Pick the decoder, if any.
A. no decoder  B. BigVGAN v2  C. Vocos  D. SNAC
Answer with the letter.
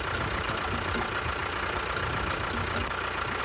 A